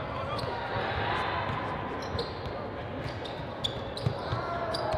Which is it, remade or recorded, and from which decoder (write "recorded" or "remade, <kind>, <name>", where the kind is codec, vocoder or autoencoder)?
recorded